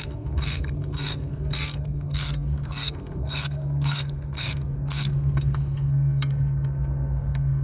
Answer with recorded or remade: remade